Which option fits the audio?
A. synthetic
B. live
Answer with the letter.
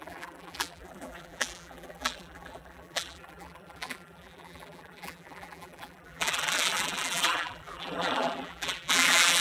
A